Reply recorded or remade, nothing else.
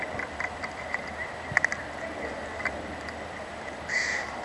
remade